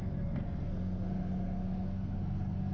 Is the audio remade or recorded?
remade